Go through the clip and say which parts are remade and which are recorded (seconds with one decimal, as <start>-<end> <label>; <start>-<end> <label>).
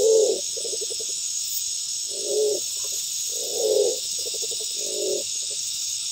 0.0-1.4 remade; 1.4-2.0 recorded; 2.0-2.5 remade; 2.5-3.9 recorded; 3.9-6.1 remade